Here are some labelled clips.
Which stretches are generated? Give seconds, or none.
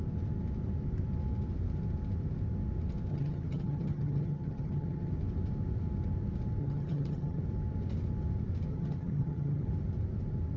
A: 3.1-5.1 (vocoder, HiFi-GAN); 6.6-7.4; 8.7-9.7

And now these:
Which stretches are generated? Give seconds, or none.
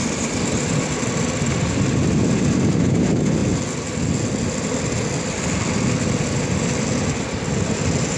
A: none